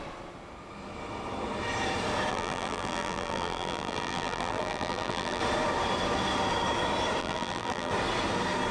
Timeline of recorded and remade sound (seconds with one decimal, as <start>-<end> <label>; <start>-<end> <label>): 0.0-2.3 recorded; 2.3-5.4 remade; 5.4-7.2 recorded; 7.2-7.9 remade; 7.9-8.7 recorded